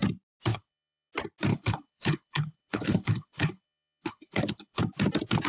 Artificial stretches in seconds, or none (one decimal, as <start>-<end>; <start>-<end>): 0.5-1.1; 1.5-4.8